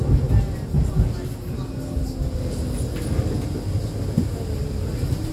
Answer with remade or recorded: recorded